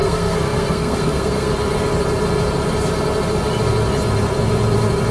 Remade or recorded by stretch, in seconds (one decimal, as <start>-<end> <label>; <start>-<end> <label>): 0.0-1.5 remade; 1.5-5.1 recorded